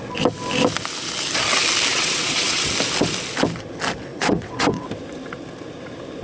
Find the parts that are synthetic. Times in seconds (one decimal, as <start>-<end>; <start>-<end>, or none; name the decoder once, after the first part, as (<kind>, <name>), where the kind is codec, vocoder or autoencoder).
1.9-2.7 (vocoder, WaveNeXt); 4.1-4.9